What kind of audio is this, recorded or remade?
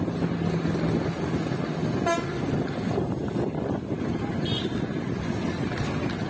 recorded